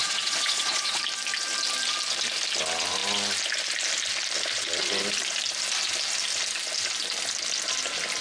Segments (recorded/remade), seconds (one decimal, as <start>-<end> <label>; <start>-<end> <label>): 0.0-1.0 remade; 1.0-8.2 recorded